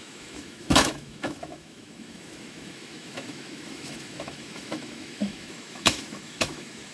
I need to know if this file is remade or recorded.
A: remade